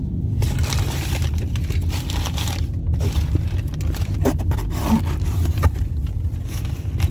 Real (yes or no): yes